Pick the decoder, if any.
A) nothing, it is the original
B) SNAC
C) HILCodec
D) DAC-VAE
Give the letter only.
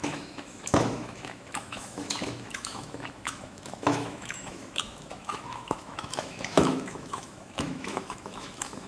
D